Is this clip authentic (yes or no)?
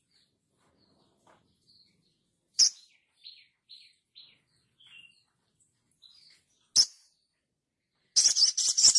yes